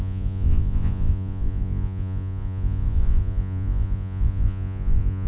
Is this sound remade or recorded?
remade